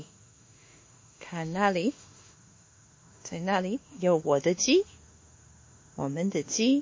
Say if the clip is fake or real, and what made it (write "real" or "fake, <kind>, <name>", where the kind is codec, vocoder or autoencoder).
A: fake, autoencoder, DAC-VAE